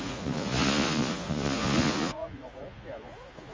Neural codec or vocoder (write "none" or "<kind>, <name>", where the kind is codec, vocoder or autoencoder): vocoder, Vocos